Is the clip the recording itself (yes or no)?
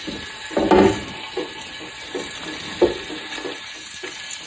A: yes